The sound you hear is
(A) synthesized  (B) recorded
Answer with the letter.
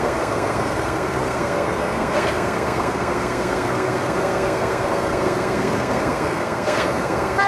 A